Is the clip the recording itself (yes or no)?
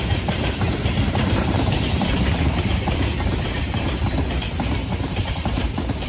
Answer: no